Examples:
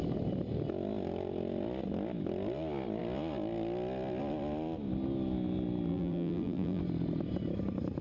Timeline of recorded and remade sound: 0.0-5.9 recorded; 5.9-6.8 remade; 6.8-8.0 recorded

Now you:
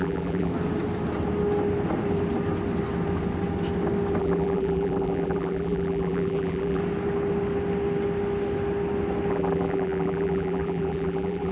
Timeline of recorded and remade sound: 0.0-0.5 remade; 0.5-4.2 recorded; 4.2-6.8 remade; 6.8-9.3 recorded; 9.3-11.5 remade

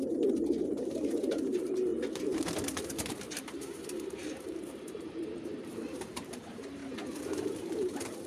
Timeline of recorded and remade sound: 0.0-1.9 remade; 1.9-3.1 recorded; 3.1-6.8 remade; 6.8-7.5 recorded; 7.5-8.3 remade

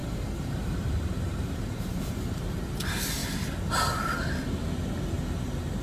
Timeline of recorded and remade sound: 0.0-2.6 remade; 2.6-5.8 recorded

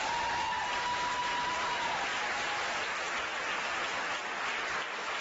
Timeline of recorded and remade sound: 0.0-2.1 recorded; 2.1-3.9 remade; 3.9-5.2 recorded

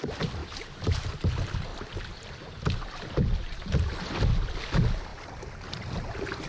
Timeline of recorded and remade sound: 0.0-0.4 recorded; 0.4-1.0 remade; 1.0-1.7 recorded; 1.7-4.1 remade; 4.1-5.1 recorded; 5.1-6.5 remade

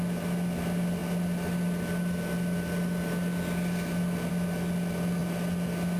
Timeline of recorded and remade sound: 0.0-6.0 recorded